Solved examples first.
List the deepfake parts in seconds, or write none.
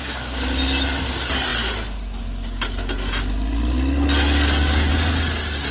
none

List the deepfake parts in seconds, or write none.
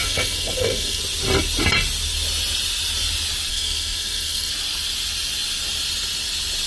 0.0-1.0 (codec, SNAC); 3.5-4.5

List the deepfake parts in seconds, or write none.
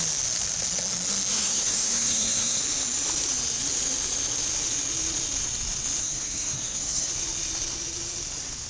1.3-2.6 (codec, SNAC); 6.0-7.1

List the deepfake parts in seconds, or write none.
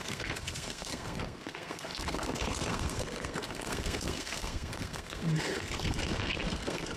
0.0-7.0 (codec, SNAC)